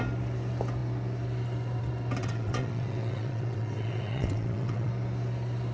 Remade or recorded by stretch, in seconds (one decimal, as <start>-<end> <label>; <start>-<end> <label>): 0.0-2.2 recorded; 2.2-4.9 remade; 4.9-5.7 recorded